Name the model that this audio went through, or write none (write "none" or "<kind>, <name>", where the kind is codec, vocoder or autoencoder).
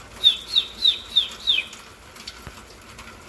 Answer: none